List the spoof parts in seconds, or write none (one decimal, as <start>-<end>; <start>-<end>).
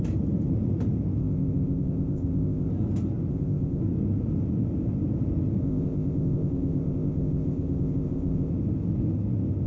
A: 1.2-2.7; 3.3-3.8; 5.6-8.5